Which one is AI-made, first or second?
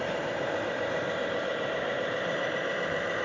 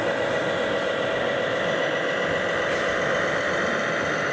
first